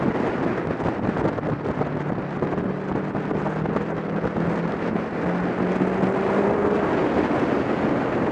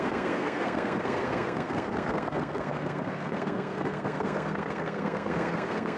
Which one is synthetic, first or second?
second